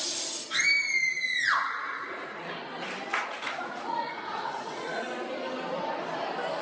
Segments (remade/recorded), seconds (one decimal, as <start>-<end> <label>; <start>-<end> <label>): 0.0-1.3 recorded; 1.3-2.5 remade; 2.5-3.1 recorded; 3.1-5.1 remade; 5.1-6.6 recorded